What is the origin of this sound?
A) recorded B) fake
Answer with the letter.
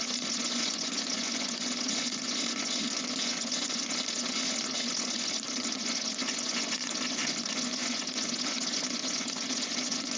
B